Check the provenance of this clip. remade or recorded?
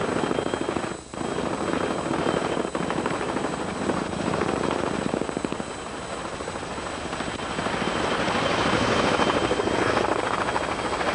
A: recorded